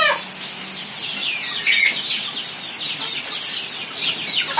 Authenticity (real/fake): real